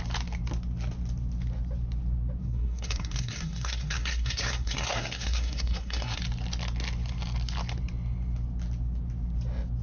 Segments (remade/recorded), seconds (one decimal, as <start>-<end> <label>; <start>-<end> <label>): 0.0-2.4 recorded; 2.4-6.2 remade; 6.2-9.8 recorded